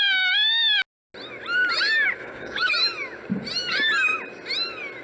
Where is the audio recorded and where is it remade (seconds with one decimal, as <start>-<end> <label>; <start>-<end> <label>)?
0.0-2.2 recorded; 2.2-2.7 remade; 2.7-5.0 recorded